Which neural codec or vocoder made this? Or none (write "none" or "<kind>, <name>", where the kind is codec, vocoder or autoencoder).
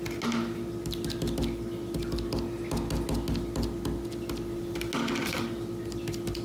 none